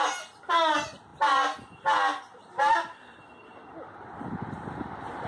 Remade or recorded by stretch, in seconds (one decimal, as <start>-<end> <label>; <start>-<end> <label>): 0.0-5.3 recorded